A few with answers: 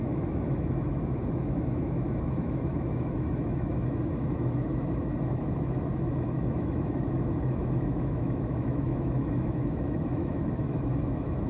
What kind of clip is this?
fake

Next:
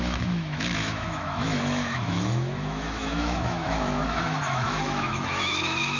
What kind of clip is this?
fake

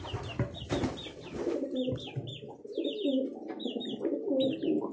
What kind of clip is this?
real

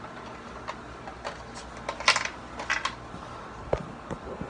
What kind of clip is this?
real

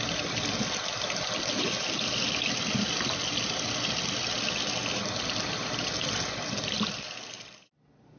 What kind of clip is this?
real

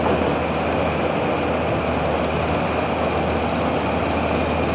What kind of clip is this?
real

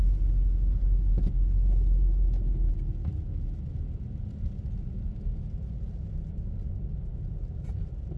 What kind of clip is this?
real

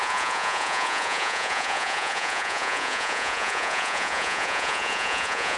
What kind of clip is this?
fake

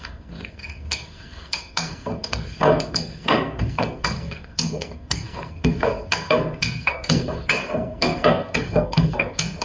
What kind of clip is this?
fake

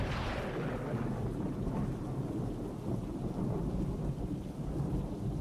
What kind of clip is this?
real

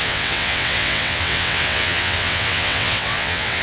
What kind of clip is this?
fake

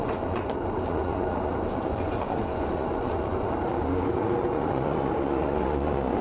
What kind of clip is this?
fake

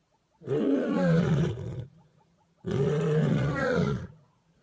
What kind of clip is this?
fake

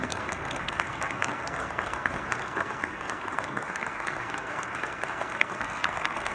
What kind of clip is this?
fake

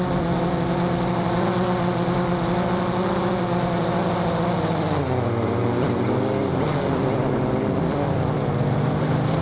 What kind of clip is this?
real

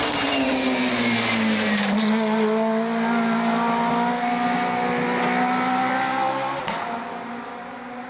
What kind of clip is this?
real